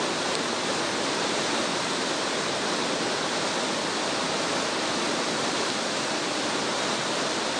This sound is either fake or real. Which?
fake